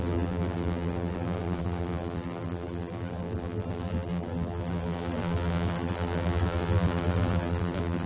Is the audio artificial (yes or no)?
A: yes